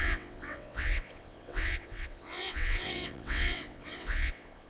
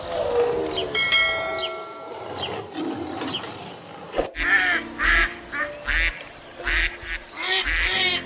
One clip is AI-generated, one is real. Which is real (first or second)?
second